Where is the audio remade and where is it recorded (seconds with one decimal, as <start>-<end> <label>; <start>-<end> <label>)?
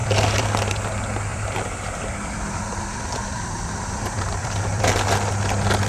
0.0-0.7 remade; 0.7-1.3 recorded; 1.3-4.8 remade; 4.8-5.9 recorded